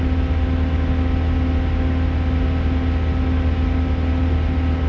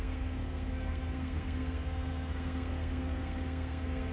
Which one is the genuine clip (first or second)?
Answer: first